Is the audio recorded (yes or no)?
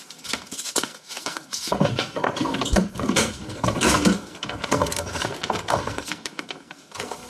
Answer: no